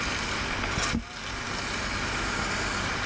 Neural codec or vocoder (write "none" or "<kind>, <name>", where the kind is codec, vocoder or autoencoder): none